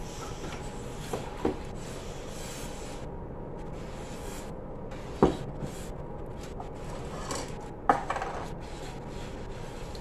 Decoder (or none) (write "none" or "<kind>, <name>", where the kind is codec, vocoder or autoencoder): none